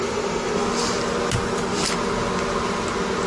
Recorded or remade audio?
recorded